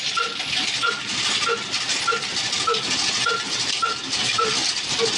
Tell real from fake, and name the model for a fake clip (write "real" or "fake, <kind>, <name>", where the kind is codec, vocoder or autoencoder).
real